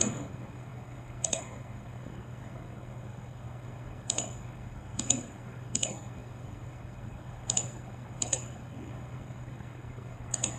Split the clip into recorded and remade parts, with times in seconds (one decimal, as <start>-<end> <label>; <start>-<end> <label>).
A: 0.0-10.6 remade